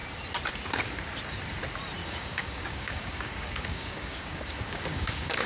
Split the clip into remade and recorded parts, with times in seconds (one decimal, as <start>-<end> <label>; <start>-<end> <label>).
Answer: 0.0-2.0 recorded; 2.0-5.5 remade